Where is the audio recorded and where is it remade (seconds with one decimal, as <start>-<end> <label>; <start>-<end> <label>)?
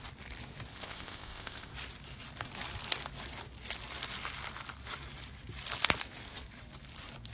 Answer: 0.0-0.7 recorded; 0.7-1.7 remade; 1.7-7.3 recorded